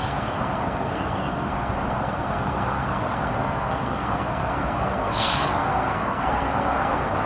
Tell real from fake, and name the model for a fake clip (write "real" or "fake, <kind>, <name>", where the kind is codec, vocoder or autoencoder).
fake, codec, SNAC